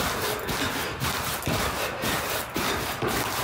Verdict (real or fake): real